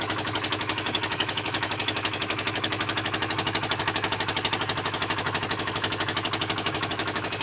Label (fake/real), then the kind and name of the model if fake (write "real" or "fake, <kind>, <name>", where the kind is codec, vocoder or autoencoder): fake, autoencoder, DAC-VAE